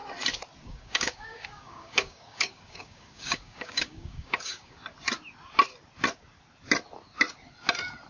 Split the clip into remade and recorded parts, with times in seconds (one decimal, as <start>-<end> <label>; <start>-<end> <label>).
0.0-0.6 recorded; 0.6-4.8 remade; 4.8-8.1 recorded